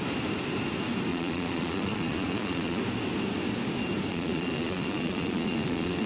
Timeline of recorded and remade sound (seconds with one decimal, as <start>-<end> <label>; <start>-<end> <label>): 0.0-1.1 recorded; 1.1-2.8 remade; 2.8-4.1 recorded; 4.1-6.1 remade